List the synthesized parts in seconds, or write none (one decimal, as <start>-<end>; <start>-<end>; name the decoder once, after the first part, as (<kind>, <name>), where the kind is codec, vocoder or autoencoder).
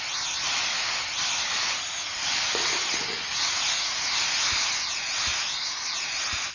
none